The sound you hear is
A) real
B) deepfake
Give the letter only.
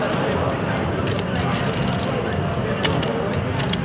A